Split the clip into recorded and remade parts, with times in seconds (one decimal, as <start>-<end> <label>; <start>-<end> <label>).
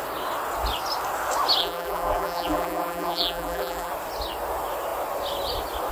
0.0-1.6 recorded; 1.6-3.9 remade; 3.9-5.9 recorded